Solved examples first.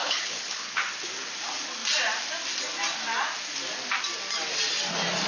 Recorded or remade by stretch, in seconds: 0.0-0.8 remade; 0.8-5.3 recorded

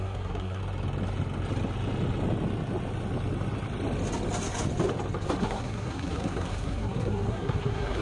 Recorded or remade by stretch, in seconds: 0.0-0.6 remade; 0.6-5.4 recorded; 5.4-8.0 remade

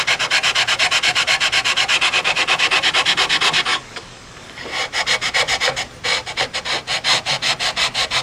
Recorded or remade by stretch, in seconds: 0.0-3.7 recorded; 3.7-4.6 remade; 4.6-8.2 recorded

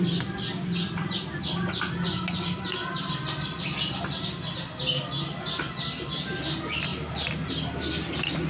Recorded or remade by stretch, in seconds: 0.0-8.5 recorded

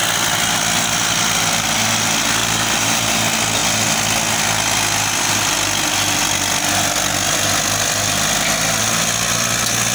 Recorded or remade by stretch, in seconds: 0.0-2.4 recorded; 2.4-3.2 remade; 3.2-9.9 recorded